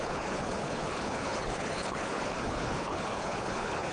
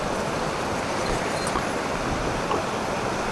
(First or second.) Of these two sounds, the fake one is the first